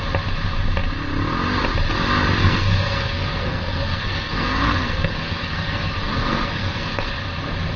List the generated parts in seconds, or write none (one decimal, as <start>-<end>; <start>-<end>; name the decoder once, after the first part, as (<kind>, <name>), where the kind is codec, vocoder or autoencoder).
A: 2.4-7.1 (codec, SNAC)